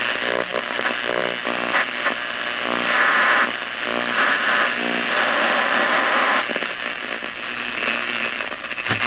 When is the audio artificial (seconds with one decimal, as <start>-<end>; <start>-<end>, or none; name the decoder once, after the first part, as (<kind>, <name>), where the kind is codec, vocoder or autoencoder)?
none